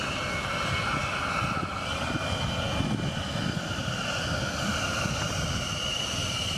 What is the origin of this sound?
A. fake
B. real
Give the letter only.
B